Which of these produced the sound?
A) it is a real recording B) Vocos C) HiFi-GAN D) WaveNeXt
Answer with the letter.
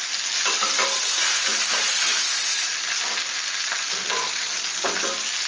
A